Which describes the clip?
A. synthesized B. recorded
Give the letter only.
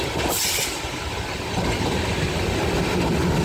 B